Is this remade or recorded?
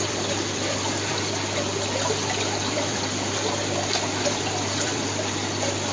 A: remade